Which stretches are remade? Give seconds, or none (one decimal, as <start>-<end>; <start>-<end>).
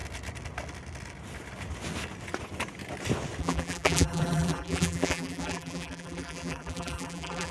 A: 3.4-7.5